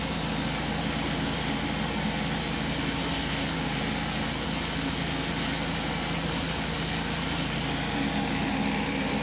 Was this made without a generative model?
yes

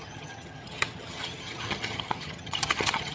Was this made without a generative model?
no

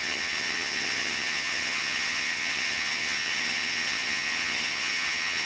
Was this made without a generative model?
no